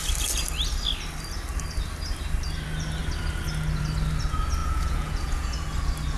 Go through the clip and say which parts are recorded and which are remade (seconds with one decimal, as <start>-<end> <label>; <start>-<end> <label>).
0.0-4.6 recorded; 4.6-5.6 remade; 5.6-6.2 recorded